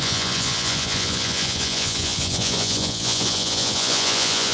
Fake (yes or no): yes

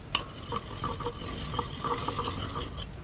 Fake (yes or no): no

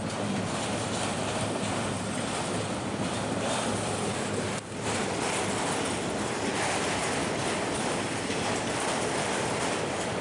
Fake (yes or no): no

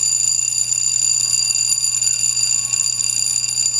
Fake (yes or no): no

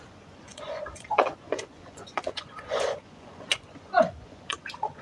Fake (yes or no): yes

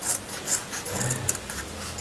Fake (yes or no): no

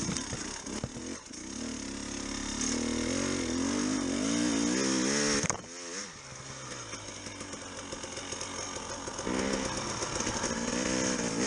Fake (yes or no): no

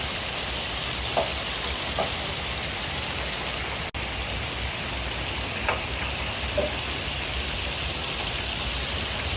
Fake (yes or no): no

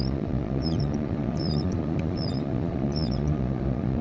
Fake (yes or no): yes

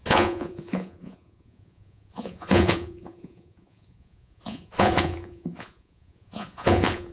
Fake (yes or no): yes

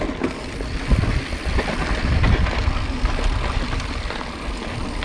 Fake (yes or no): no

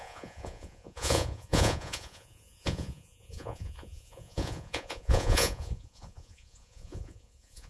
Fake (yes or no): yes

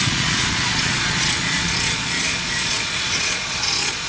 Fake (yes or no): yes